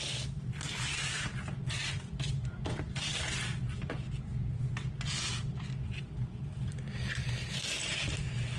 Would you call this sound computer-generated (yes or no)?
no